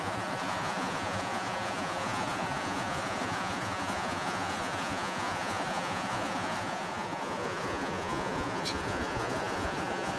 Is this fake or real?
fake